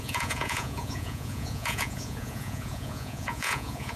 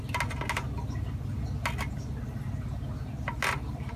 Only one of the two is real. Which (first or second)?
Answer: second